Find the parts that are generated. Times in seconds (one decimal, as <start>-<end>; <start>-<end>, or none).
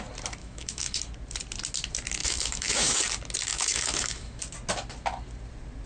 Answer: 0.4-1.0; 2.2-3.0; 3.5-4.4